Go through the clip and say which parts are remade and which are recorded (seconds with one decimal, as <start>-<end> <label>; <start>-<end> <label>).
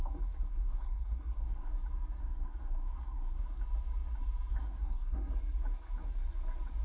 0.0-0.5 recorded; 0.5-1.7 remade; 1.7-2.2 recorded; 2.2-3.6 remade; 3.6-4.5 recorded; 4.5-5.3 remade; 5.3-6.8 recorded